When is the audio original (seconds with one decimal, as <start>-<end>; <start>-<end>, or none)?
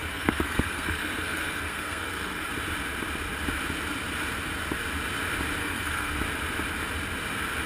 2.5-5.6; 6.1-7.7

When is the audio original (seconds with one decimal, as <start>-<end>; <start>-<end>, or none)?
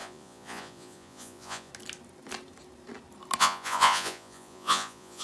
1.7-3.4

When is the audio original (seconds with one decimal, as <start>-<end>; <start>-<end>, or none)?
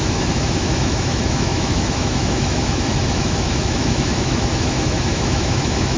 none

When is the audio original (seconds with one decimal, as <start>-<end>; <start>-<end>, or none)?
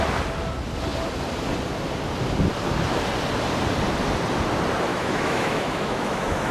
0.0-4.9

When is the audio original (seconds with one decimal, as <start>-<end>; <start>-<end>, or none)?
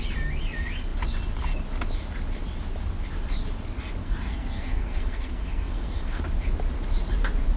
0.0-4.0; 6.2-7.6